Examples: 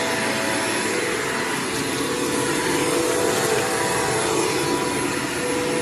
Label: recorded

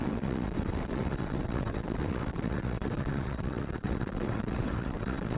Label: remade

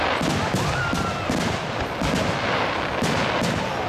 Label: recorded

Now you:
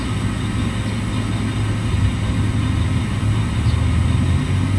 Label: recorded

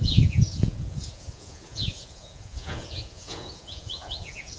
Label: remade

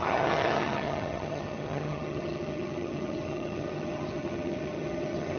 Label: remade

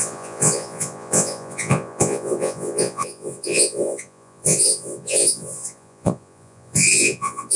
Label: remade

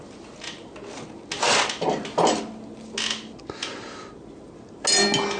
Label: recorded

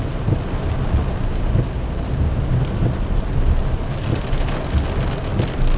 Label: recorded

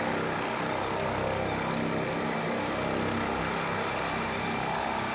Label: recorded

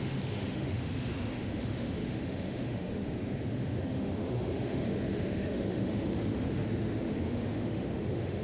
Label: remade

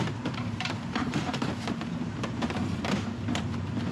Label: remade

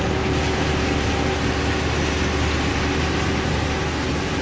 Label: recorded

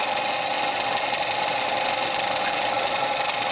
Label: recorded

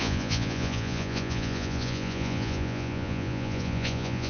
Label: remade